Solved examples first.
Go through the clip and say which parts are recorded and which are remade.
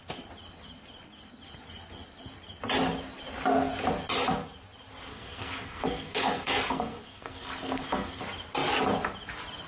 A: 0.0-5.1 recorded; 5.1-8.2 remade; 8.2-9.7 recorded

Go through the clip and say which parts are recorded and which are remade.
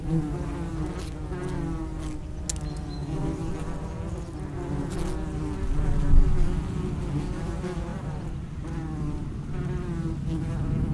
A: 0.0-3.0 recorded; 3.0-3.5 remade; 3.5-7.9 recorded; 7.9-9.5 remade; 9.5-10.9 recorded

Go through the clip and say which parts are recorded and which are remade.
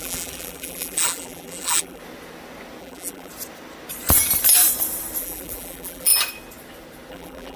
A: 0.0-2.0 remade; 2.0-2.8 recorded; 2.8-3.3 remade; 3.3-5.2 recorded; 5.2-6.1 remade; 6.1-7.1 recorded; 7.1-7.6 remade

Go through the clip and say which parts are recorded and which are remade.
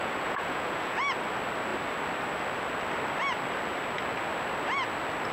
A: 0.0-1.0 remade; 1.0-5.3 recorded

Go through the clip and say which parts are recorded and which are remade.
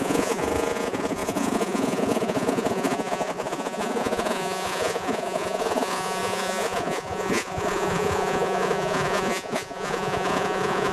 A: 0.0-10.9 remade